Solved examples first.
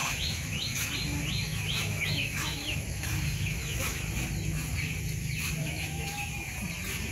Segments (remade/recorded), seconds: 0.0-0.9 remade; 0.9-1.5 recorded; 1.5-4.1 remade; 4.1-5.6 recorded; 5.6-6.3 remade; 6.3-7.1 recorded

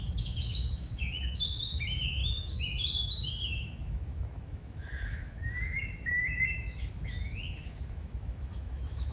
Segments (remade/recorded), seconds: 0.0-9.1 remade

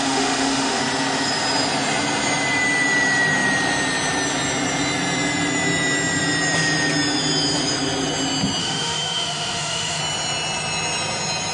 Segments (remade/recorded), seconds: 0.0-0.8 remade; 0.8-8.6 recorded; 8.6-10.0 remade; 10.0-11.5 recorded

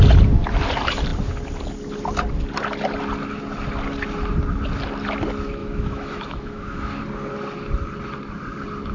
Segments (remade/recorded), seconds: 0.0-5.6 recorded; 5.6-7.0 remade; 7.0-8.9 recorded

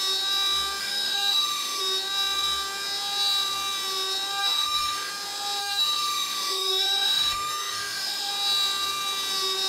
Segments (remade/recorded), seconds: 0.0-0.8 recorded; 0.8-1.8 remade; 1.8-4.4 recorded; 4.4-5.1 remade; 5.1-5.6 recorded; 5.6-8.3 remade; 8.3-9.7 recorded